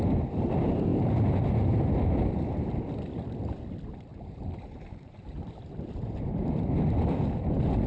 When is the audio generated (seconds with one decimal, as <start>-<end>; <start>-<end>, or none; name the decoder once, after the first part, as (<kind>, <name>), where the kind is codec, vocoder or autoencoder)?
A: 0.9-1.6 (vocoder, BigVGAN v2); 4.1-6.7